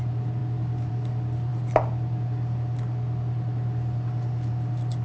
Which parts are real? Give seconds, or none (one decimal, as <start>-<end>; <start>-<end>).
0.0-5.0